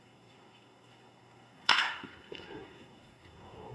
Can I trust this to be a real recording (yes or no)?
no